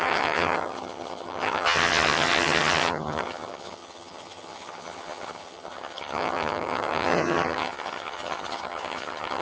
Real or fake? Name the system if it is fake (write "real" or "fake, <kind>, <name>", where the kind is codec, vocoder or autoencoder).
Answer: fake, vocoder, HiFi-GAN